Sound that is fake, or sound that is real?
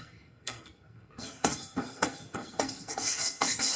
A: fake